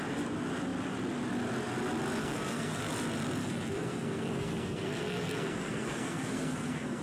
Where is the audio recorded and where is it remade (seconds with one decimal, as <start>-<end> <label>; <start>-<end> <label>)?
0.0-2.2 recorded; 2.2-2.8 remade; 2.8-3.4 recorded; 3.4-7.0 remade